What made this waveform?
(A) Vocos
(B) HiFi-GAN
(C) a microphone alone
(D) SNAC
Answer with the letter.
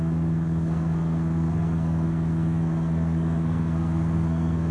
D